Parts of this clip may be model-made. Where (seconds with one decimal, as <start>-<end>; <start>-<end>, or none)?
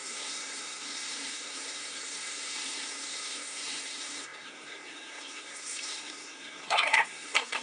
0.0-7.6